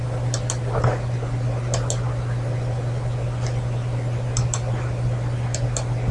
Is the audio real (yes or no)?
yes